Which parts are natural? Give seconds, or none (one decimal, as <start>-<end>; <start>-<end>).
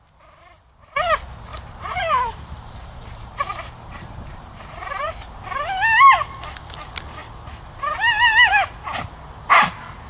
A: 0.0-1.5; 5.1-10.1